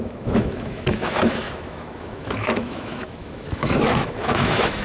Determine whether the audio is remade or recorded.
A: remade